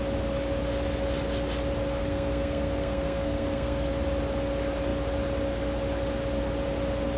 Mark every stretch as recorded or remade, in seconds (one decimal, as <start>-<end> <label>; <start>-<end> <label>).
0.0-2.0 recorded; 2.0-3.9 remade; 3.9-7.2 recorded